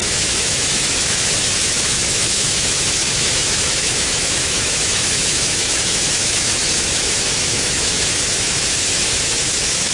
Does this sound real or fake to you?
fake